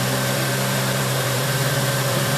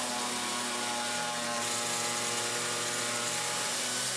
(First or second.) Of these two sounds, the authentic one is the second